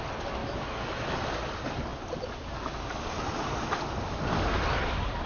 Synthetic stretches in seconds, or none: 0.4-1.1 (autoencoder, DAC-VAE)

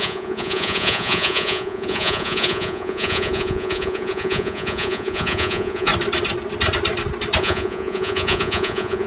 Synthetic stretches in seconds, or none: 0.0-5.9 (vocoder, Vocos); 7.4-9.1

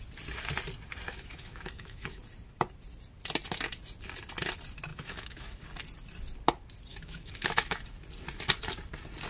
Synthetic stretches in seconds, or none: 1.1-2.2 (autoencoder, DAC-VAE); 4.9-5.6; 6.9-7.8

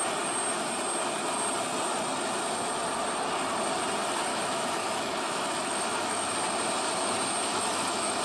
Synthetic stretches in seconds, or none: 4.3-6.3 (autoencoder, DAC-VAE); 7.5-8.2

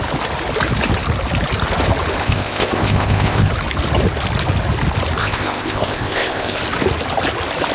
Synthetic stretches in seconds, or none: 2.2-3.5 (codec, ZipCodec); 5.2-6.6